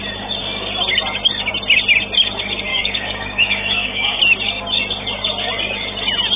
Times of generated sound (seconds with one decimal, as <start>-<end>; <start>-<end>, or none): 2.7-4.2